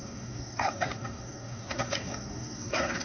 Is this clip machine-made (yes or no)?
yes